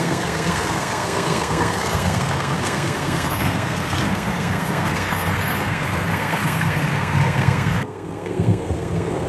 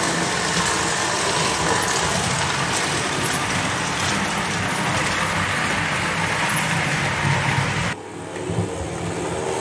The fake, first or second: first